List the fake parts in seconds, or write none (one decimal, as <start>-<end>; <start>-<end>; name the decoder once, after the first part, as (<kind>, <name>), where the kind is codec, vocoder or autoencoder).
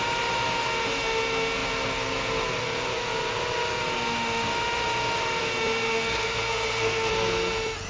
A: 5.9-7.1 (codec, SNAC)